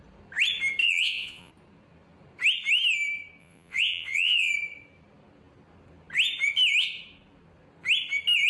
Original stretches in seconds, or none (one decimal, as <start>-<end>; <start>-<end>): 0.0-0.8; 1.5-3.4; 4.5-8.5